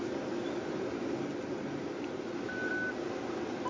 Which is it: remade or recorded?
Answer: recorded